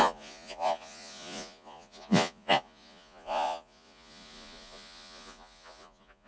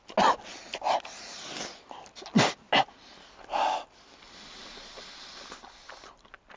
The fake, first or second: first